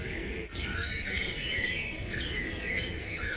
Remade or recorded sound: remade